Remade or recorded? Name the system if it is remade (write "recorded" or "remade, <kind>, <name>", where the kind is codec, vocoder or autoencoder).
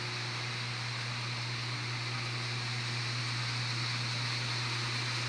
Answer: recorded